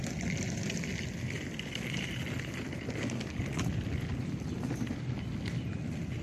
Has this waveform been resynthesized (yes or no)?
no